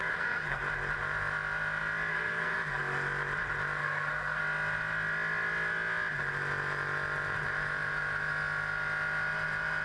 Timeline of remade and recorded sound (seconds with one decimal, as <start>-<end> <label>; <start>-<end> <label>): 0.0-0.6 remade; 0.6-2.1 recorded; 2.1-2.8 remade; 2.8-3.8 recorded; 3.8-4.4 remade; 4.4-9.8 recorded